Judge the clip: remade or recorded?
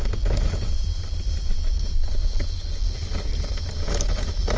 recorded